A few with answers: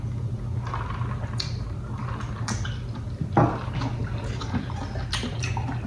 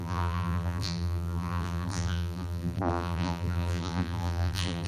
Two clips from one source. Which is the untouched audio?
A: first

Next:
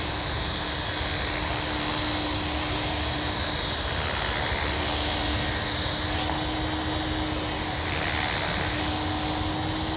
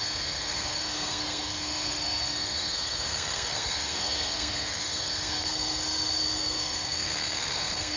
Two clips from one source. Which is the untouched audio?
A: first